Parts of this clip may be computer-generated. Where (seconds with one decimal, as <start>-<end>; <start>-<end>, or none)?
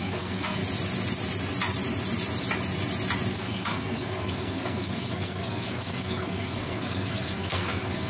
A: 0.0-0.6; 3.3-8.1